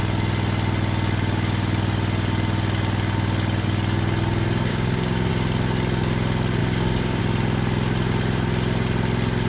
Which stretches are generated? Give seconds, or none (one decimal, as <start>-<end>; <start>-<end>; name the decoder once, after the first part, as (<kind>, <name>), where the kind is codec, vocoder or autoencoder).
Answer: 4.7-5.3 (codec, DAC); 6.6-7.2